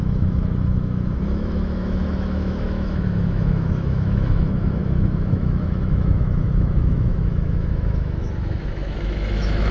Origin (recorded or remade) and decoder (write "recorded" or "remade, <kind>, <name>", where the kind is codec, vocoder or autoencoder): remade, autoencoder, DAC-VAE